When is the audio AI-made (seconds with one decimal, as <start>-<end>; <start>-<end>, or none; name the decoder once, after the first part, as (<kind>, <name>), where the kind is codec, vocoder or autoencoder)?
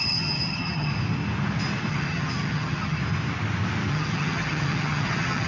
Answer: 0.0-0.9 (vocoder, HiFi-GAN); 1.9-3.0; 3.9-5.5